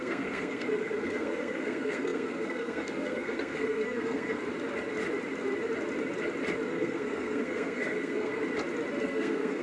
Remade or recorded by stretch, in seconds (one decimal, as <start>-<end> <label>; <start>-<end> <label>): 0.0-4.4 remade; 4.4-6.7 recorded; 6.7-8.4 remade; 8.4-9.0 recorded; 9.0-9.6 remade